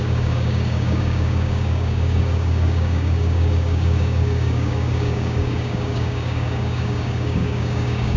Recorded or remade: remade